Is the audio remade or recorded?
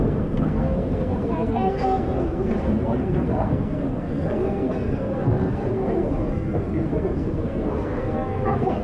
remade